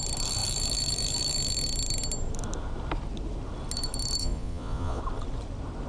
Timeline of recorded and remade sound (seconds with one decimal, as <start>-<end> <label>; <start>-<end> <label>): 0.0-4.2 recorded; 4.2-5.0 remade; 5.0-5.9 recorded